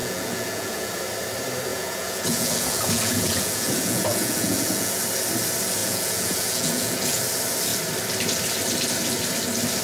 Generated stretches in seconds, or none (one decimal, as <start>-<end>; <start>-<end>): 0.0-0.9; 1.7-4.9; 5.8-7.2